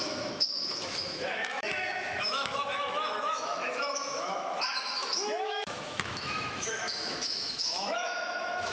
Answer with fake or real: fake